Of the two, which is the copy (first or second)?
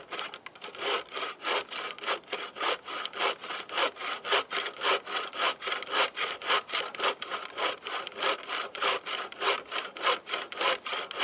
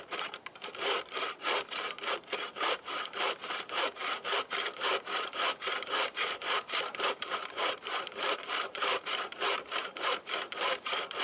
second